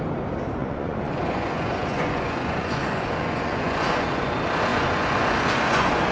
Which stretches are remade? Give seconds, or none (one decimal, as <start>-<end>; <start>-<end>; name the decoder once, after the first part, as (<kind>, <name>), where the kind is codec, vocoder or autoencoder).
0.6-4.3 (vocoder, Vocos); 4.7-6.1